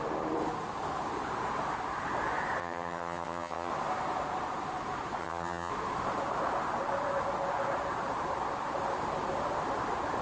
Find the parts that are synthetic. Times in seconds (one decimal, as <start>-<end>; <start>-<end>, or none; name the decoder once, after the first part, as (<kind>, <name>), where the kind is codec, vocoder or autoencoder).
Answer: 2.6-3.7 (vocoder, HiFi-GAN); 5.2-5.7